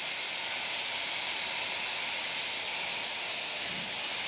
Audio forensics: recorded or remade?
recorded